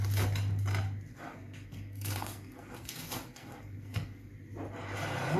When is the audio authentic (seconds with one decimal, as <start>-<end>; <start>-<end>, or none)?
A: 0.0-1.1; 4.3-5.4